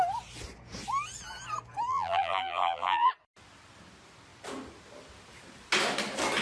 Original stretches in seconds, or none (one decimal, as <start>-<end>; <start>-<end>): 0.0-1.9; 3.1-6.4